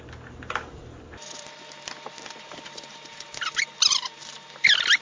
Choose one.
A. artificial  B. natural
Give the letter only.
B